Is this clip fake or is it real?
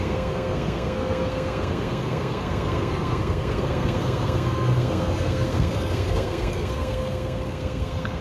fake